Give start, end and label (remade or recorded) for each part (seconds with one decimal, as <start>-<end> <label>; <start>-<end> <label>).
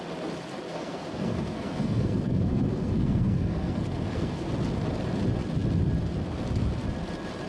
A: 0.0-0.7 recorded; 0.7-4.5 remade; 4.5-7.5 recorded